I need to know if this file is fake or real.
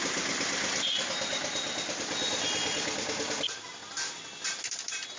real